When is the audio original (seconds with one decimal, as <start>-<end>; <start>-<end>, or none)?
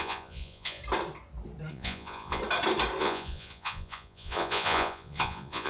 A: 0.8-1.7; 2.4-3.0